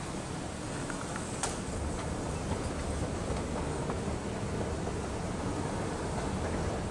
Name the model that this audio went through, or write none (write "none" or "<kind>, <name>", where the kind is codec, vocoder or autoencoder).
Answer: none